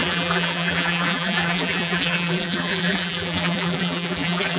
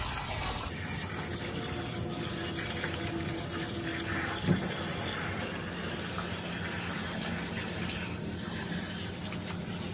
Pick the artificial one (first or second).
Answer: first